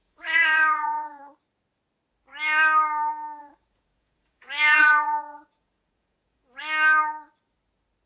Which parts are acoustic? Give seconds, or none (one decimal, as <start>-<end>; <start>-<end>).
1.2-3.4; 6.6-8.1